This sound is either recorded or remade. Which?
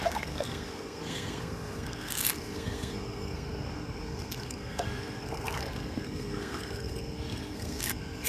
remade